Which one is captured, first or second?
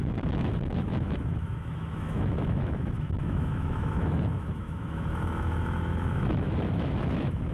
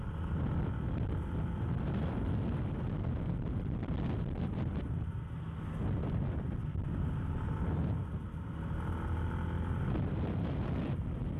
second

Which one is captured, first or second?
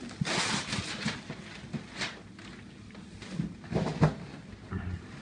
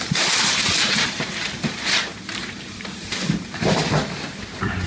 first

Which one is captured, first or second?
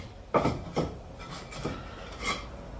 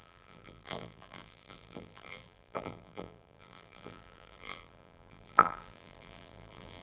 first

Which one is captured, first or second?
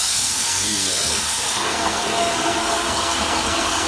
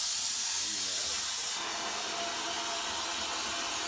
second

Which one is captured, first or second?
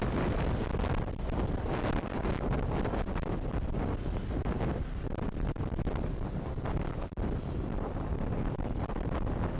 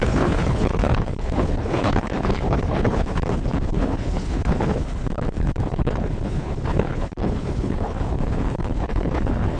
first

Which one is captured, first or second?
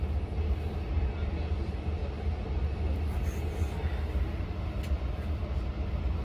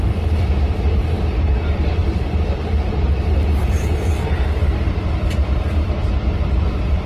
first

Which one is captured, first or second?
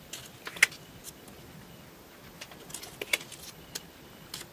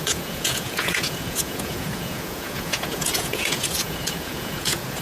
first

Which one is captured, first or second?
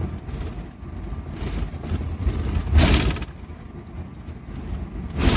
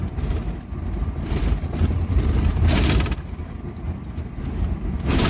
first